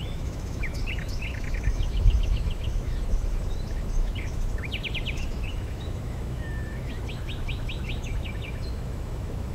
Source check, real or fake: fake